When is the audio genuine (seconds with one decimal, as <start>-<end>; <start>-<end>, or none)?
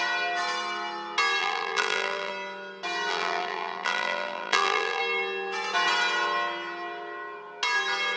0.0-1.4; 2.3-3.1; 5.0-8.2